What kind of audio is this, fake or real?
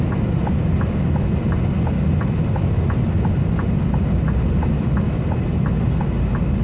real